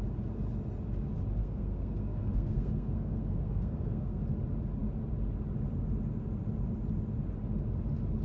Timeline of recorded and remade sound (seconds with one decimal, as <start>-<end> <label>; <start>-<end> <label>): 0.0-1.4 recorded; 1.4-4.2 remade; 4.2-8.2 recorded